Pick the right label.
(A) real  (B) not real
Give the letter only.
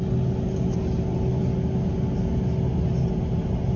A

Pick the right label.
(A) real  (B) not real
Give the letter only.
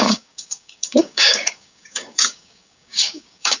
B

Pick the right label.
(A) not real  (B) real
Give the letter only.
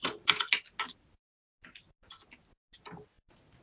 B